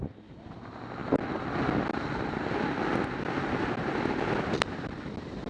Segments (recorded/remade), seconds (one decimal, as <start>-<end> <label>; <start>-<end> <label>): 0.0-5.5 recorded